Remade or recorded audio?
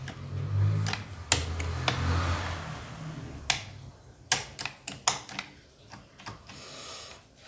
recorded